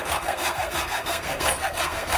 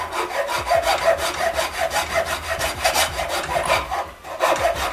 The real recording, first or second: second